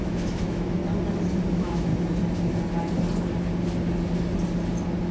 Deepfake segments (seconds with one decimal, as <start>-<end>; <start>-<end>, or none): 0.0-0.8; 1.5-1.9